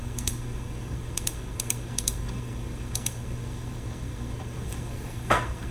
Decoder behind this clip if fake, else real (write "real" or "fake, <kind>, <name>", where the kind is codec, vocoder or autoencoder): fake, codec, SNAC